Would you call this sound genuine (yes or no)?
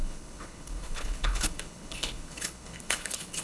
no